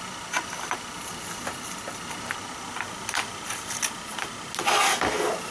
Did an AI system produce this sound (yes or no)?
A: no